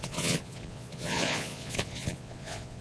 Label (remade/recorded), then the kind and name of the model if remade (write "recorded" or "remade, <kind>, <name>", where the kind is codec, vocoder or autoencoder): remade, vocoder, Vocos